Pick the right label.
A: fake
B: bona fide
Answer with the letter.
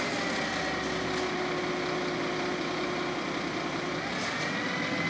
B